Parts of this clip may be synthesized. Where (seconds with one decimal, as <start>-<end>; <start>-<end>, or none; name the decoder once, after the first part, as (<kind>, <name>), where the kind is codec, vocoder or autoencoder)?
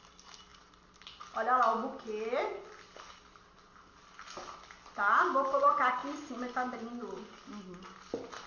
none